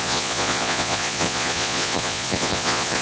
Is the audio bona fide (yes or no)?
no